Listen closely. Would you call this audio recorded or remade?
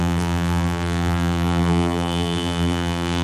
remade